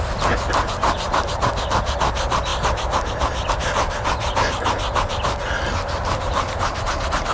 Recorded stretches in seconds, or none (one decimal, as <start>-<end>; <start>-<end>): 0.0-7.3